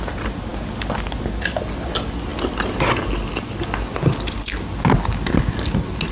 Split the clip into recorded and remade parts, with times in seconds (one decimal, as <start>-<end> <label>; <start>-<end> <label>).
0.0-6.1 recorded